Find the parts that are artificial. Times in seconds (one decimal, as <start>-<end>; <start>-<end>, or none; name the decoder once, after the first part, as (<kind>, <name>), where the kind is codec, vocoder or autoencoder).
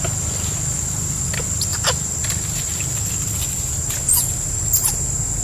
none